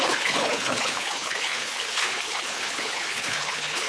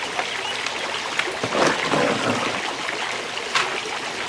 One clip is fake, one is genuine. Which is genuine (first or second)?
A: second